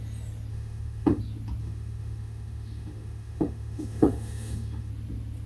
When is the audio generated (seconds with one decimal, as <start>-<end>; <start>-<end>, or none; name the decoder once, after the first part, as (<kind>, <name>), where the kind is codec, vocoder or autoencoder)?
0.5-1.2 (autoencoder, DAC-VAE); 1.6-4.9